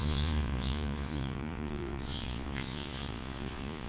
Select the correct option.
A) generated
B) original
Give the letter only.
A